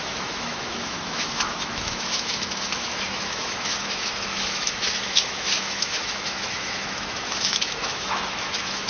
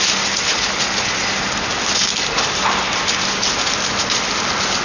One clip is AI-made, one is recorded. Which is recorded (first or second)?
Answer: second